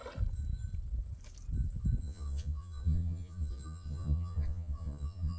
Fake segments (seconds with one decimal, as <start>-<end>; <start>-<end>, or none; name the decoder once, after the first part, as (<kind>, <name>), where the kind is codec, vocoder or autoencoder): 2.0-5.4 (vocoder, Vocos)